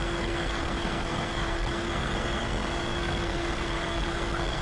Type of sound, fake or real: fake